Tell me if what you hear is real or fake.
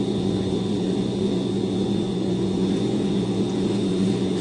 fake